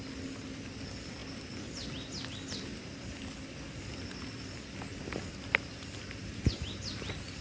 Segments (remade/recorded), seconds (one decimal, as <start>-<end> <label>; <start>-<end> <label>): 0.0-7.4 recorded